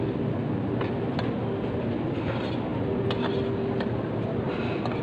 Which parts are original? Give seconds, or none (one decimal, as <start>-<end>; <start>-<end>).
0.0-5.0